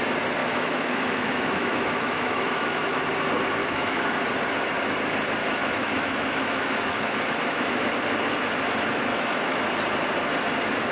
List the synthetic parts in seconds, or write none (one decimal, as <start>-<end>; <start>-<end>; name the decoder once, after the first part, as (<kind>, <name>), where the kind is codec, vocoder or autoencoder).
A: 0.4-3.0 (autoencoder, DAC-VAE); 3.6-4.2; 5.4-7.8; 9.1-9.6